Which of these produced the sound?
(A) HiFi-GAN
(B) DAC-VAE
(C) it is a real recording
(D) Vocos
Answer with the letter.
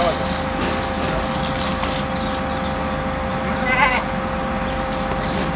C